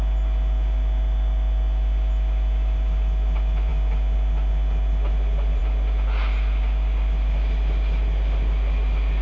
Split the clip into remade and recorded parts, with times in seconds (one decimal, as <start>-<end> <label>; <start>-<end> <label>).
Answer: 0.0-9.2 recorded